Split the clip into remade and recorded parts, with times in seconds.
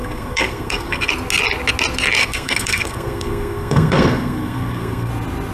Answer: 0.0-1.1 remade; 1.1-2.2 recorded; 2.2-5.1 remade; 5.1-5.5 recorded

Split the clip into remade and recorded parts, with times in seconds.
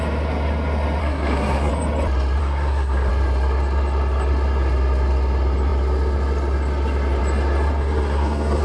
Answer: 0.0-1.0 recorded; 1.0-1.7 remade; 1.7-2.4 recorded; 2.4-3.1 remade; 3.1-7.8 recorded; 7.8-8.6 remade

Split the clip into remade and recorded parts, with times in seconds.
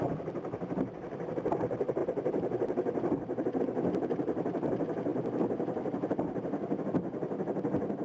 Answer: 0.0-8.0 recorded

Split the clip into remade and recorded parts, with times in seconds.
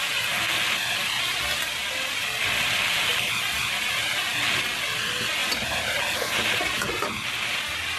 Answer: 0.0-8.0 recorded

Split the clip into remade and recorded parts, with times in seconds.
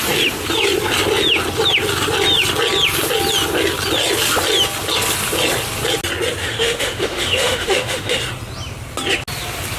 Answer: 0.0-6.4 recorded; 6.4-8.2 remade; 8.2-9.8 recorded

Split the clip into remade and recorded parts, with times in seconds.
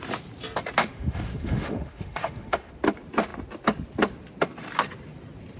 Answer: 0.0-0.8 recorded; 0.8-2.7 remade; 2.7-5.6 recorded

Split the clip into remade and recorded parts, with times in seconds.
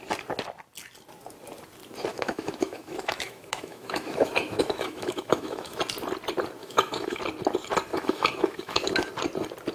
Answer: 0.0-2.1 recorded; 2.1-5.8 remade; 5.8-6.6 recorded; 6.6-7.2 remade; 7.2-7.9 recorded; 7.9-9.1 remade; 9.1-9.7 recorded